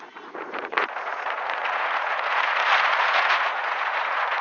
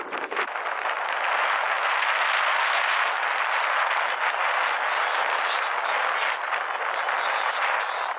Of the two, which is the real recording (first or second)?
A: second